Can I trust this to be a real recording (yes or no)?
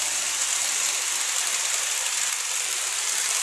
yes